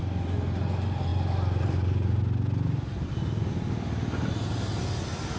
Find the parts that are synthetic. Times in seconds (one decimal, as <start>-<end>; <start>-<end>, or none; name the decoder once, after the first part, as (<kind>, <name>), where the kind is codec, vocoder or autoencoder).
none